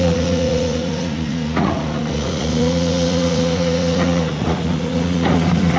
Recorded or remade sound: remade